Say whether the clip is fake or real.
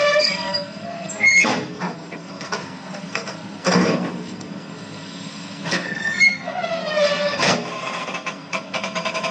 fake